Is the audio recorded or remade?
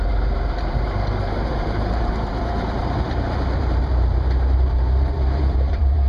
remade